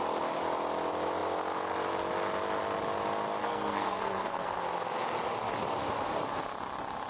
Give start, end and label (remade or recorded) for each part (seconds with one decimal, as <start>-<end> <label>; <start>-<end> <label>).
0.0-3.4 recorded; 3.4-4.6 remade; 4.6-7.1 recorded

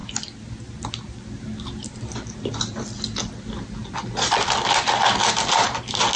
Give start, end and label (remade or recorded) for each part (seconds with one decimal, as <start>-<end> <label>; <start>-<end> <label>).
0.0-6.2 recorded

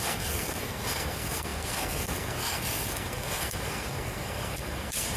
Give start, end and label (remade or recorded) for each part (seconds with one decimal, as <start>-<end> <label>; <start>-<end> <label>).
0.0-5.2 remade

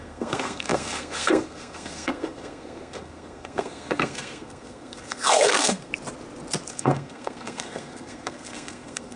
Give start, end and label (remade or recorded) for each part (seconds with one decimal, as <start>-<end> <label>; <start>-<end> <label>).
0.0-5.9 remade; 5.9-6.7 recorded; 6.7-9.2 remade

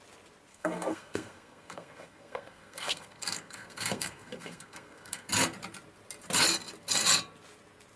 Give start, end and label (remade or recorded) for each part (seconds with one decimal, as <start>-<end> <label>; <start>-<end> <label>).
0.0-0.5 recorded; 0.5-5.3 remade; 5.3-8.0 recorded